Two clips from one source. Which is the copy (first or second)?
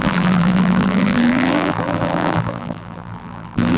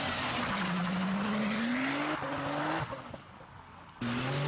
first